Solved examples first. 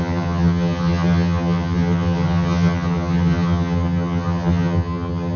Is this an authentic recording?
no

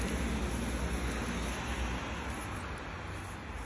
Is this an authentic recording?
yes